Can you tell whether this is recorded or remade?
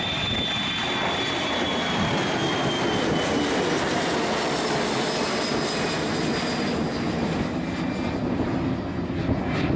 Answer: recorded